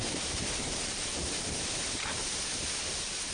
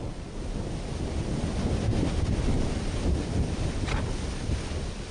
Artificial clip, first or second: first